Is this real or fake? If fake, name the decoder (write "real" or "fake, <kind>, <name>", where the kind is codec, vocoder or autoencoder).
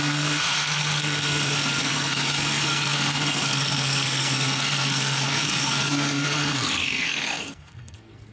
fake, codec, SNAC